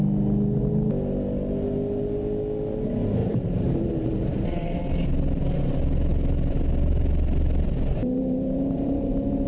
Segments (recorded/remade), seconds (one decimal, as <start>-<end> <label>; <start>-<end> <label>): 0.0-3.2 recorded; 3.2-4.8 remade; 4.8-8.0 recorded; 8.0-9.1 remade; 9.1-9.5 recorded